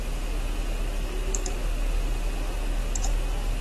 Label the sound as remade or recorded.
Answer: recorded